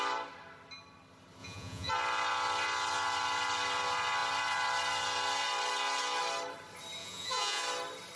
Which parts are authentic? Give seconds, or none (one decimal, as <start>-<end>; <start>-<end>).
0.0-1.4; 1.9-7.0; 7.6-8.2